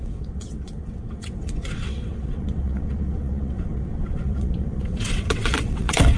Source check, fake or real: fake